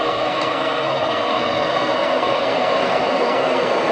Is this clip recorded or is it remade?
remade